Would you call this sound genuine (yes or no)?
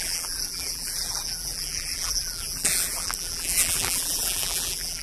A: no